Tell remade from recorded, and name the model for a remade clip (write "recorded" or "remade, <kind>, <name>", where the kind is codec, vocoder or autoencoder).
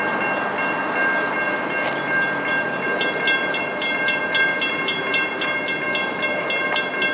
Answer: recorded